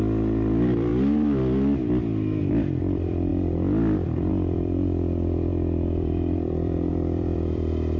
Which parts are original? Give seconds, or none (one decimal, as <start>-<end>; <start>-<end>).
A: 0.9-2.4